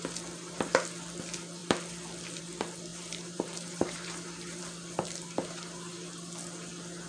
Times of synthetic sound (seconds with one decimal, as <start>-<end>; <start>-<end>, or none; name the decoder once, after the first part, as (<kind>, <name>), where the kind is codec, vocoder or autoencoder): 2.9-4.6 (vocoder, BigVGAN v2)